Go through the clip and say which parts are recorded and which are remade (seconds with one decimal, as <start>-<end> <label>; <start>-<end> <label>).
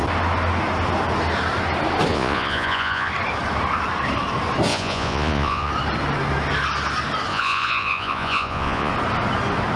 0.0-2.1 recorded; 2.1-3.1 remade; 3.1-4.7 recorded; 4.7-5.7 remade; 5.7-7.3 recorded; 7.3-8.9 remade; 8.9-9.8 recorded